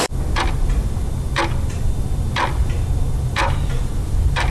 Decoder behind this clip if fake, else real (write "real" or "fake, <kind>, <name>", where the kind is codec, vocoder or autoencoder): fake, vocoder, BigVGAN v2